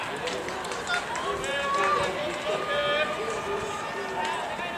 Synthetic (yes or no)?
no